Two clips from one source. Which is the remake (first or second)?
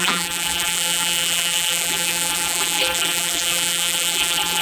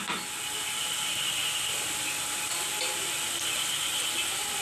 first